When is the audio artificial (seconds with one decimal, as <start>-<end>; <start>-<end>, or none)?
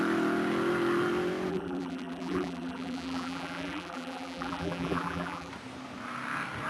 1.5-5.5